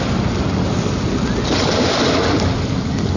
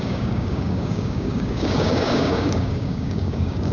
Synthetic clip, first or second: second